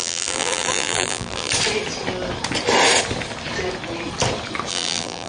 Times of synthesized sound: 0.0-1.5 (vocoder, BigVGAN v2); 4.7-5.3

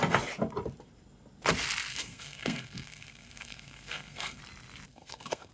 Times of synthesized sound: 1.9-4.4 (codec, SNAC); 4.9-5.5

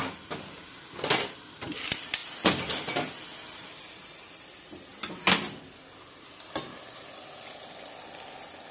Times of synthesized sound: none

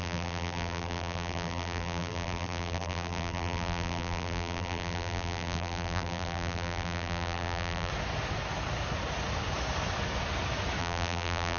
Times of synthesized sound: 0.0-7.9 (vocoder, BigVGAN v2); 10.8-11.6

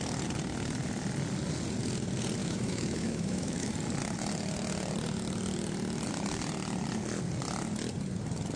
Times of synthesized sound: 2.4-3.7 (autoencoder, DAC-VAE)

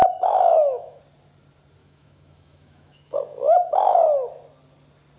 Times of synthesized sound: 0.0-1.0 (autoencoder, DAC-VAE); 1.8-4.0

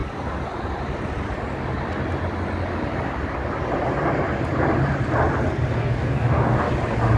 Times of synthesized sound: 5.8-6.7 (codec, DAC)